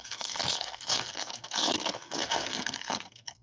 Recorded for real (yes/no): no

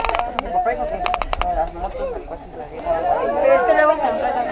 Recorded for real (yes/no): yes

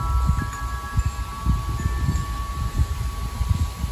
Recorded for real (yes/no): yes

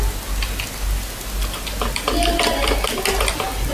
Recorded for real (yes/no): yes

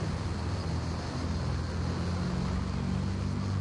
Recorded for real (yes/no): yes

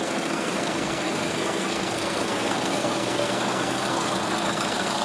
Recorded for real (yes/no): no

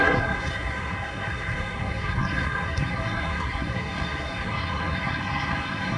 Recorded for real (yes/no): no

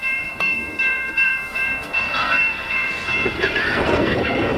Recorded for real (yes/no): no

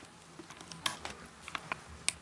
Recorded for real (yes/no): yes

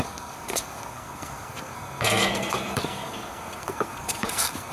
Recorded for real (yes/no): no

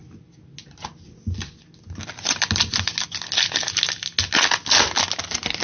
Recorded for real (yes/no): yes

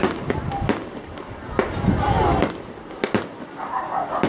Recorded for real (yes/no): yes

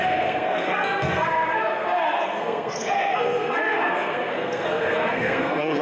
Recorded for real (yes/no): no